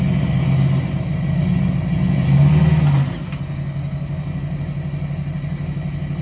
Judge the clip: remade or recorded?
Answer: recorded